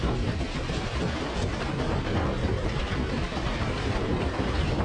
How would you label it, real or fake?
fake